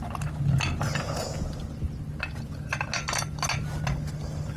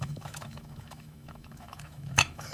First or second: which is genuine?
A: first